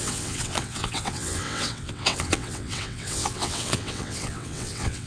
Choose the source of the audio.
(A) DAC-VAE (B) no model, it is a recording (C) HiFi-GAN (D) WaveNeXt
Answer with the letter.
D